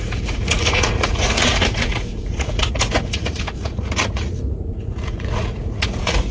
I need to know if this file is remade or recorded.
remade